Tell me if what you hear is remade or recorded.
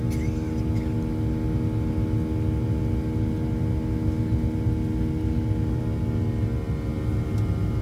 recorded